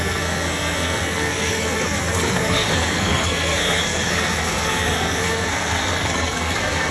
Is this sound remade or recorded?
remade